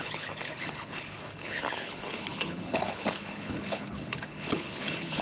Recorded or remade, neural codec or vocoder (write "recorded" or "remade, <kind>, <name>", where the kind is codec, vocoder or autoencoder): remade, codec, HILCodec